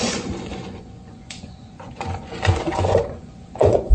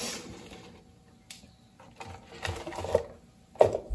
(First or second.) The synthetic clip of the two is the first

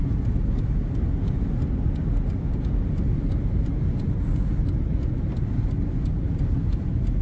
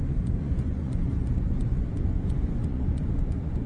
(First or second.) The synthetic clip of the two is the second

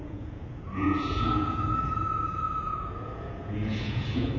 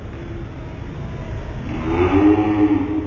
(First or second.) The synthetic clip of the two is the first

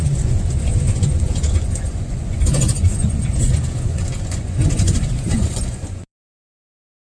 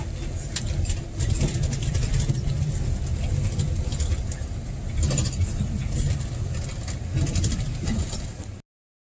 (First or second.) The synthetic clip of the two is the first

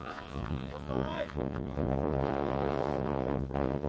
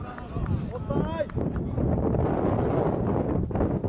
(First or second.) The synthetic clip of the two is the first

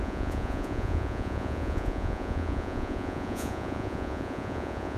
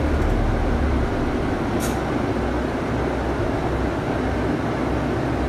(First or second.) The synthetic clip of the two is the first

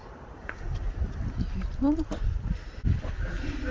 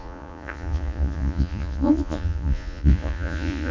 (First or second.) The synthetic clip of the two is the second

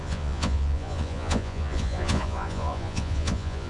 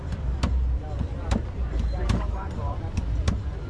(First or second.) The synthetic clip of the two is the first